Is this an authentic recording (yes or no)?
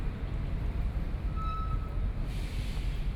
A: yes